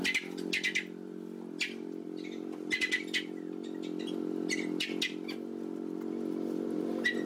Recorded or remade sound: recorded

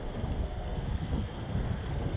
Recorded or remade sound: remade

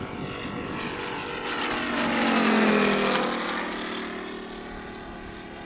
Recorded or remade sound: recorded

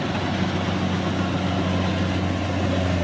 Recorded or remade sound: recorded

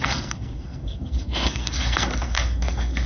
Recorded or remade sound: remade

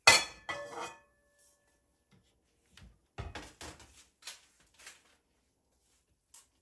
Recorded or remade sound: recorded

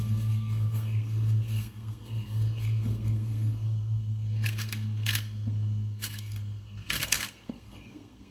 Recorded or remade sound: remade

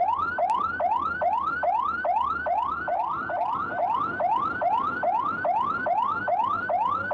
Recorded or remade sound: recorded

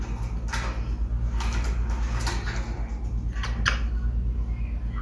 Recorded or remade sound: recorded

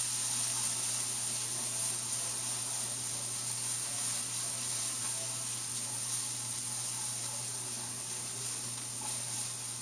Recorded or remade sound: recorded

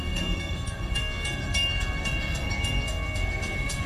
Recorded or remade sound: remade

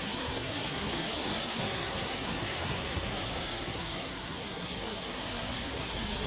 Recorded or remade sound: remade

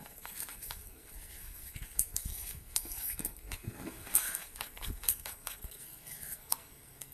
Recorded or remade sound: remade